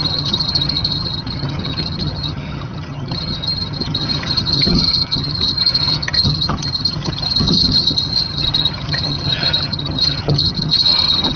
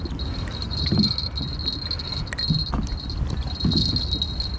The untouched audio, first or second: second